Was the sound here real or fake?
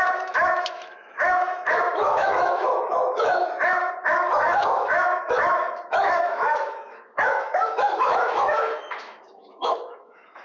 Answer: fake